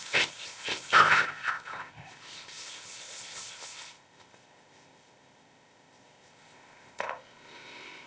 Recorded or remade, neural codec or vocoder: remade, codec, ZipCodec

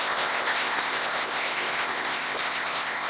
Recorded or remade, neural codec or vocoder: remade, codec, ZipCodec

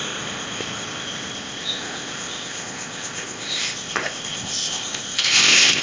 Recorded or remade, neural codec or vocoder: remade, codec, ZipCodec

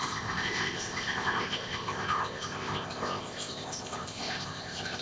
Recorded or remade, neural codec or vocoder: remade, codec, ZipCodec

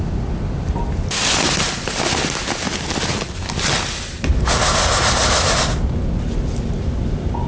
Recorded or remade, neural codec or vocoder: recorded